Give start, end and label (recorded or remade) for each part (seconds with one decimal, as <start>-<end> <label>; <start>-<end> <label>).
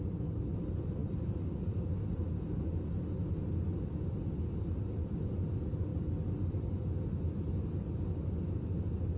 0.0-9.2 recorded